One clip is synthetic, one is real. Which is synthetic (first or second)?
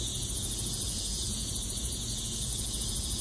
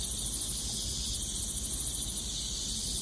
first